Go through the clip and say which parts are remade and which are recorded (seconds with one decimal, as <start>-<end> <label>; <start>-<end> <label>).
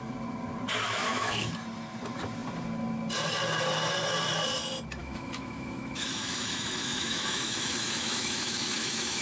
0.0-1.0 recorded; 1.0-1.5 remade; 1.5-5.0 recorded; 5.0-9.2 remade